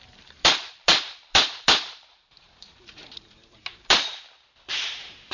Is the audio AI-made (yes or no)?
yes